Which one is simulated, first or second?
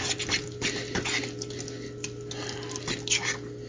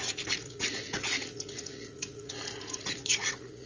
second